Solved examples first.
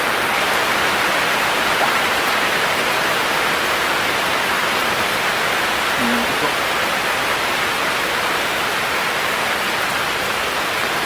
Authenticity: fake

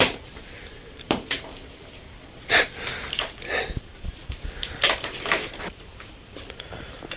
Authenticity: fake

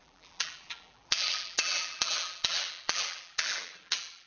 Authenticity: fake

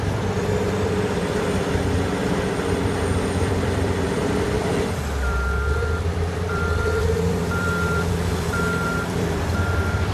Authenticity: fake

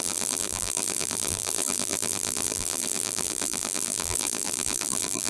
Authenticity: fake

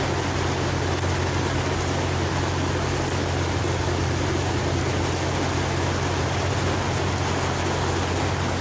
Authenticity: real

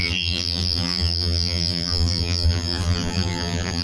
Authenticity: fake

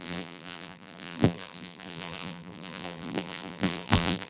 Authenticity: fake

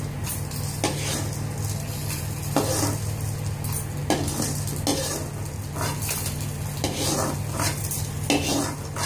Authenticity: real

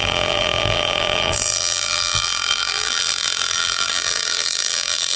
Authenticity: fake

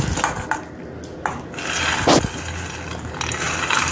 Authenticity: real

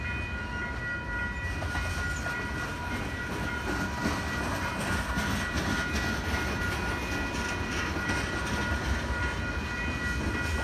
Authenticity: real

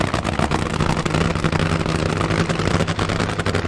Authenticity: real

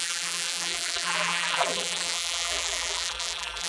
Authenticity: fake